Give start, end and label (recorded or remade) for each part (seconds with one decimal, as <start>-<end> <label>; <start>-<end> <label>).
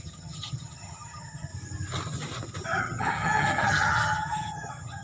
0.0-1.5 remade; 1.5-2.8 recorded; 2.8-5.0 remade